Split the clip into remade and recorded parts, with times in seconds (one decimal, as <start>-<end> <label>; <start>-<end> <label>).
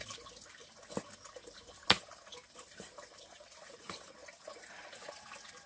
0.0-0.6 remade; 0.6-2.5 recorded; 2.5-4.2 remade; 4.2-5.7 recorded